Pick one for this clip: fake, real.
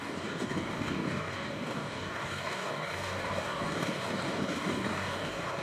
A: fake